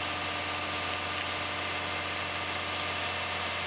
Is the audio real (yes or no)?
yes